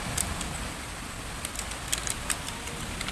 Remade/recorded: recorded